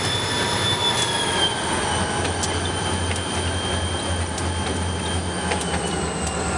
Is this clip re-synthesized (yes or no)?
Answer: no